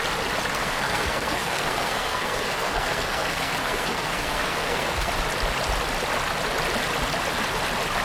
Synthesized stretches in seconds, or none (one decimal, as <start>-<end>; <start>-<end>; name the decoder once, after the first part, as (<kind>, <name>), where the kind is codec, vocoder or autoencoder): 0.5-5.1 (codec, SNAC)

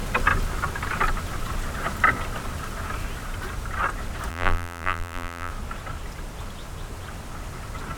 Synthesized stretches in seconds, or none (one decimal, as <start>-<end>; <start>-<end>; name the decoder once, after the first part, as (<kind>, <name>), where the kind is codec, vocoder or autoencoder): 4.3-5.5 (vocoder, BigVGAN v2)

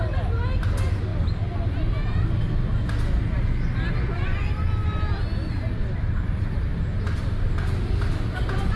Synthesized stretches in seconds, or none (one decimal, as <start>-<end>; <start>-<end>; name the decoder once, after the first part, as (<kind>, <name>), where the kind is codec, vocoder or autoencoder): none